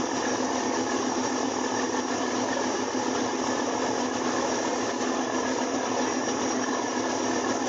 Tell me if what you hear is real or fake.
real